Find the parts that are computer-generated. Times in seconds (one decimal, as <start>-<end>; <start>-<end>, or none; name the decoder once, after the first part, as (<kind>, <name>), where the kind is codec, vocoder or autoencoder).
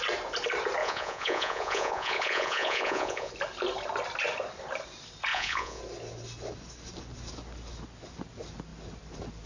0.8-3.3 (vocoder, Vocos); 5.3-5.8